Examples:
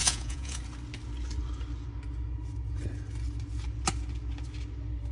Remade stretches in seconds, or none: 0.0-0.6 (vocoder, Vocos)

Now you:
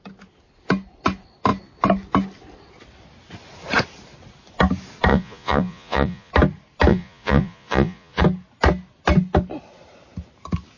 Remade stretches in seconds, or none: 5.1-6.3 (vocoder, Vocos); 6.9-8.2

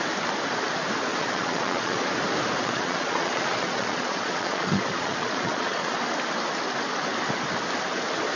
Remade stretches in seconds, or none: 1.1-2.1 (vocoder, Vocos); 2.6-5.9

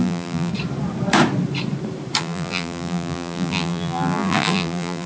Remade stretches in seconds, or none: 0.0-0.5 (vocoder, BigVGAN v2); 2.2-5.1

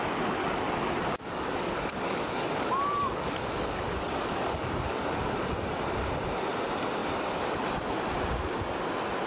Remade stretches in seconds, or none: 0.4-5.3 (codec, DAC)

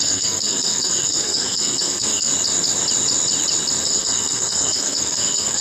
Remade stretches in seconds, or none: 0.0-2.3 (codec, SNAC); 3.8-5.6

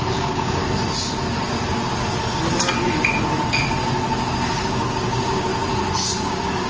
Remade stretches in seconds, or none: 0.0-0.6 (codec, DAC); 4.6-5.5; 6.2-6.7

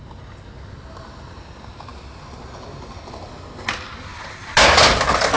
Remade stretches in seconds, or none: none